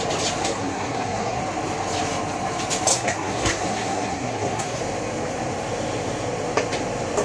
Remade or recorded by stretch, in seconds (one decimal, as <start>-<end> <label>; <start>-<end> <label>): 0.0-0.4 recorded; 0.4-1.4 remade; 1.4-2.9 recorded; 2.9-4.8 remade; 4.8-7.2 recorded